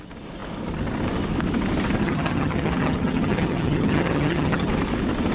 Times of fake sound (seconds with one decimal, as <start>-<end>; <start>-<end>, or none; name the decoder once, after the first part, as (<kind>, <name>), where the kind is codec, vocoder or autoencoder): 2.0-4.7 (vocoder, HiFi-GAN)